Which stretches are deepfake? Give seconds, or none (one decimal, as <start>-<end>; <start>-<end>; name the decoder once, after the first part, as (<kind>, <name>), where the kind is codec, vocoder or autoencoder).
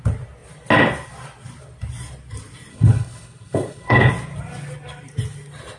2.7-4.1 (codec, HILCodec)